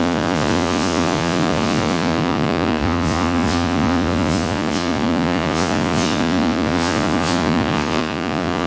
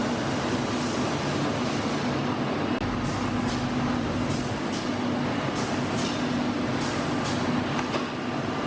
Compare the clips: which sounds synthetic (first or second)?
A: first